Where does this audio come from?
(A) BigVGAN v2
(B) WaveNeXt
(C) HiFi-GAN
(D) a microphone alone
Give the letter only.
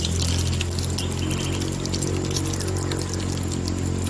D